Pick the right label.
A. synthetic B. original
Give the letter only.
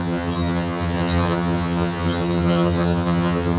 A